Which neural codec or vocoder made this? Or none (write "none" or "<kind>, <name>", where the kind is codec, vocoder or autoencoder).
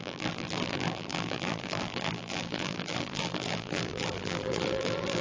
vocoder, BigVGAN v2